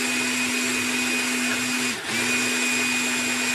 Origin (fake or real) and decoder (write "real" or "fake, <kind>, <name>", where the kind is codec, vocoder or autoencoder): real